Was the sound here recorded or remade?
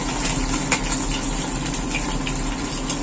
recorded